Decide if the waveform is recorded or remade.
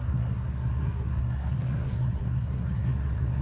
remade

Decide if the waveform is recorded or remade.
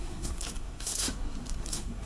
remade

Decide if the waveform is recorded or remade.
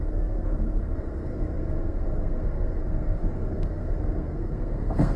remade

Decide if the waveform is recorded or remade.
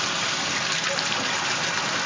recorded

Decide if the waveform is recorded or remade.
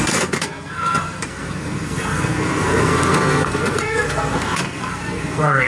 remade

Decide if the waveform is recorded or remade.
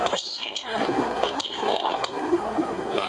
remade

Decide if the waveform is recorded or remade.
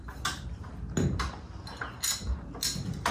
recorded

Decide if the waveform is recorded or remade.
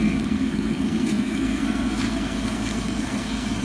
remade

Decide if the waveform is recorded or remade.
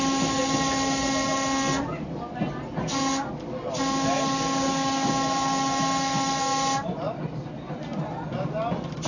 recorded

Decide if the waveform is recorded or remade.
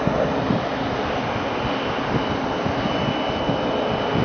recorded